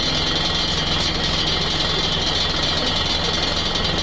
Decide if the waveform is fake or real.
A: real